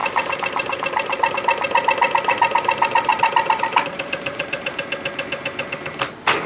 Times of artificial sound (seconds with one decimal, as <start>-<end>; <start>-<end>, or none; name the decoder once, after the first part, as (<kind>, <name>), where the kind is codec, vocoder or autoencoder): 0.0-1.3 (vocoder, BigVGAN v2); 3.1-4.7